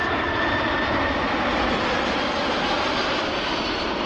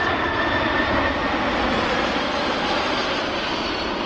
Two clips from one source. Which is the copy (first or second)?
first